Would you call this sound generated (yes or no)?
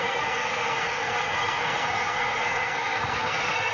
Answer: yes